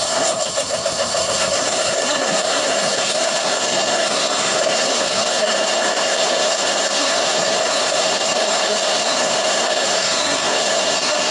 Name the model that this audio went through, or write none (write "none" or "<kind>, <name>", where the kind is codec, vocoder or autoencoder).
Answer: codec, SNAC